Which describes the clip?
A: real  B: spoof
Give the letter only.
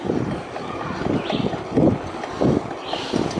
A